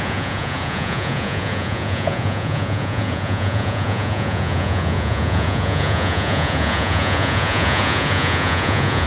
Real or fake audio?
fake